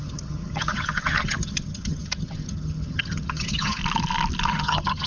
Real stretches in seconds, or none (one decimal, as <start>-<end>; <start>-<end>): 3.8-4.5